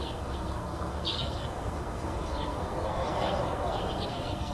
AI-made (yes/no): yes